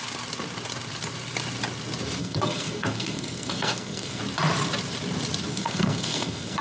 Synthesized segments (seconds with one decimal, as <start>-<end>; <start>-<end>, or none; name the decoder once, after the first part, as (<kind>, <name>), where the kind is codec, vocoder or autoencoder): 2.2-4.2 (codec, SNAC); 5.5-6.6